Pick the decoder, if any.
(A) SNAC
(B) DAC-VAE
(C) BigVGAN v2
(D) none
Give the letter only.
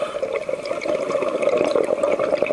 D